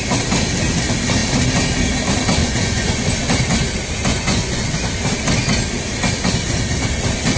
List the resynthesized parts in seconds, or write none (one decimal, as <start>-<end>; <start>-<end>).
2.4-3.0; 4.1-4.8